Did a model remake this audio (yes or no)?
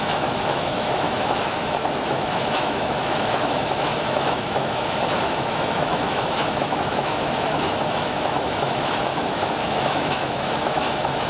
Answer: yes